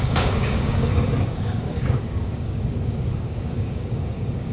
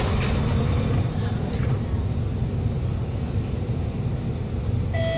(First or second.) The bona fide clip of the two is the second